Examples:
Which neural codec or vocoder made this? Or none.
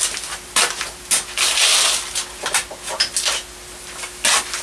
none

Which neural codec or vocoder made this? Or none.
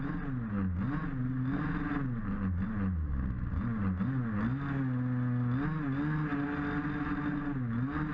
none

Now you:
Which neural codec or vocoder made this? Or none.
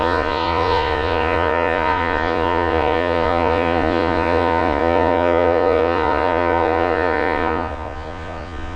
vocoder, Vocos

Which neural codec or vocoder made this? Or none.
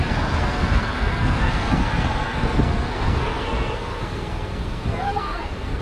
codec, SNAC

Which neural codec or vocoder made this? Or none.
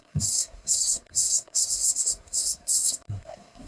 codec, SNAC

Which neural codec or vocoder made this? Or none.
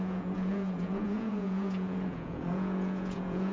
vocoder, Vocos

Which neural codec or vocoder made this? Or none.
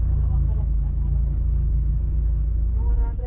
codec, DAC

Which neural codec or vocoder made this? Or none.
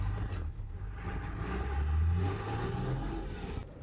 none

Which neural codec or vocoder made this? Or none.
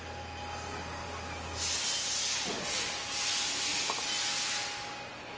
none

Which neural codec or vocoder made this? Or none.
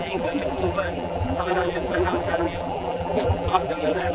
vocoder, BigVGAN v2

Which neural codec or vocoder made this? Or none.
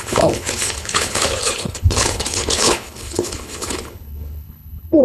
codec, HILCodec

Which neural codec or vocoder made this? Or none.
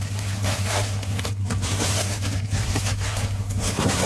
codec, SNAC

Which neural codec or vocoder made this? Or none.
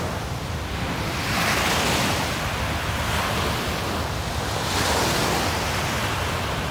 none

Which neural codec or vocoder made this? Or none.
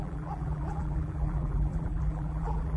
vocoder, BigVGAN v2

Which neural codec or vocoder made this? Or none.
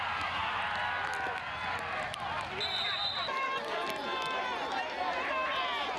none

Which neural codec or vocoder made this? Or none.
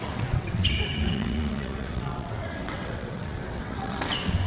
vocoder, WaveNeXt